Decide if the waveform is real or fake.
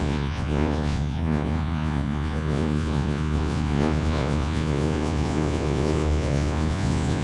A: fake